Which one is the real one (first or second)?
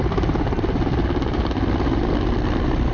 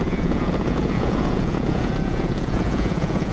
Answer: first